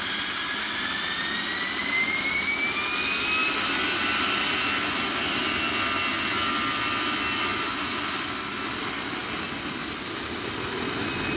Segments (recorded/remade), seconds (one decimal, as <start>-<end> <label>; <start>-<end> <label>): 0.0-11.4 recorded